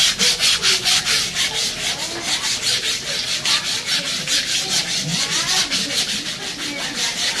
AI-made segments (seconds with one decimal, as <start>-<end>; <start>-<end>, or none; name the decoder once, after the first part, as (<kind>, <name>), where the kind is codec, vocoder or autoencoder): 0.4-1.0 (vocoder, Vocos); 5.1-5.8